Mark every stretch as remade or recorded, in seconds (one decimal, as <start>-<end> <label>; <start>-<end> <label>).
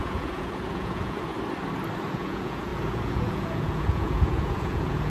0.0-1.3 remade; 1.3-2.1 recorded; 2.1-5.1 remade